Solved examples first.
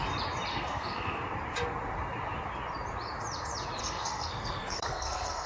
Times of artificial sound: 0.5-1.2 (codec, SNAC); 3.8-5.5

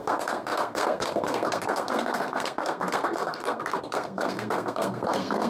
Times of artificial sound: 0.0-5.5 (codec, SNAC)